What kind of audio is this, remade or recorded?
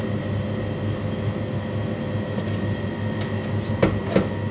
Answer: recorded